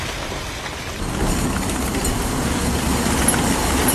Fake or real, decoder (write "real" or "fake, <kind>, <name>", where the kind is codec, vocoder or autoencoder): real